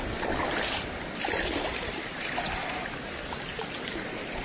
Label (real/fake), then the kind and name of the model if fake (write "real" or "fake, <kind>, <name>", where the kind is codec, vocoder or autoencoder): fake, vocoder, BigVGAN v2